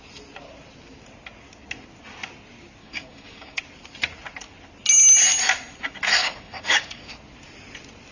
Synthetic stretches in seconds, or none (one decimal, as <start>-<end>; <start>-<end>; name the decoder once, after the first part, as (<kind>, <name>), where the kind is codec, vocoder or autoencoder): 2.8-3.6 (codec, DAC); 6.2-7.1